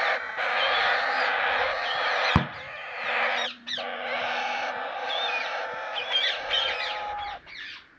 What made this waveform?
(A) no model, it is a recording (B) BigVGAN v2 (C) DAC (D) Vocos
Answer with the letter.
A